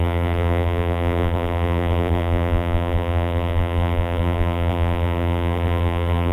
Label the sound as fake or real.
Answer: fake